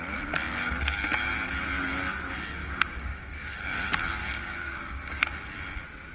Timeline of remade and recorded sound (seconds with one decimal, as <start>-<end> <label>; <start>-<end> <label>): 0.0-2.6 recorded; 2.6-3.8 remade; 3.8-4.2 recorded; 4.2-5.2 remade; 5.2-6.1 recorded